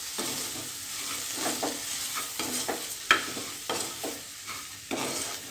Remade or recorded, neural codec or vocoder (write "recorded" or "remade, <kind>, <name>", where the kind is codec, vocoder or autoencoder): recorded